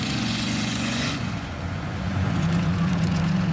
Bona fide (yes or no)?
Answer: no